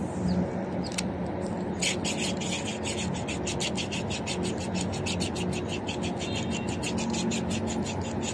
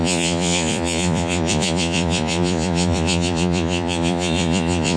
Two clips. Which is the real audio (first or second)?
first